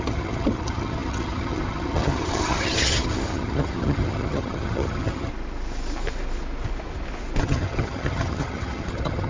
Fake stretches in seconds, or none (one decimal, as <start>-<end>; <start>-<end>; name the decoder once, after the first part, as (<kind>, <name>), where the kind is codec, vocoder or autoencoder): 0.0-5.3 (vocoder, HiFi-GAN); 7.4-9.3